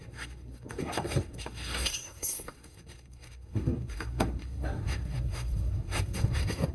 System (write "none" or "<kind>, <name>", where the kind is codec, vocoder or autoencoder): codec, SNAC